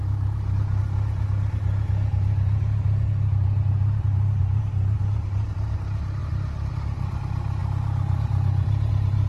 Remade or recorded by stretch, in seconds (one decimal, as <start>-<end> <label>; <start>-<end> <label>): 0.0-0.8 remade; 0.8-4.4 recorded; 4.4-6.2 remade; 6.2-6.7 recorded; 6.7-9.3 remade